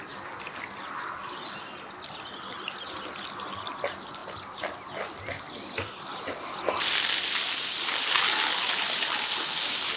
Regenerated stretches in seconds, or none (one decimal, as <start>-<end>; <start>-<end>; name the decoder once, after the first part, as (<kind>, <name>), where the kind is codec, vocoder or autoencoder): 1.2-2.5 (vocoder, BigVGAN v2)